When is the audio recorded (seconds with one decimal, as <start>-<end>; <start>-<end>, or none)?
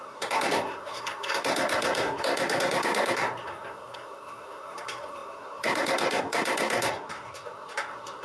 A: none